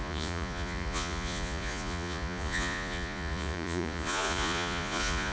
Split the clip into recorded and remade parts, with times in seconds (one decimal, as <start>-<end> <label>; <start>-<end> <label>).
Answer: 0.0-5.3 remade

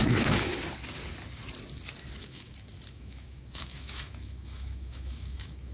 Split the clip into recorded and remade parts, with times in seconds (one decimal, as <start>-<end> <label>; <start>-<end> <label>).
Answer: 0.0-0.5 remade; 0.5-2.2 recorded; 2.2-5.7 remade

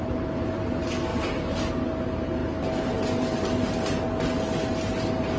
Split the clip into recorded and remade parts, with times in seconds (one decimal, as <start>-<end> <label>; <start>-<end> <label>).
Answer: 0.0-1.1 recorded; 1.1-1.7 remade; 1.7-5.4 recorded

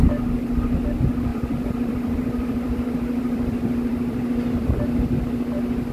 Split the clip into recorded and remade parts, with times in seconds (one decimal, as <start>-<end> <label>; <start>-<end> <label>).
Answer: 0.0-1.3 recorded; 1.3-4.8 remade; 4.8-5.9 recorded

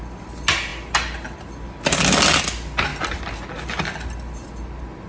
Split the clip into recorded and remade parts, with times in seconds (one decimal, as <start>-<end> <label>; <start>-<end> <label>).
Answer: 0.0-5.1 recorded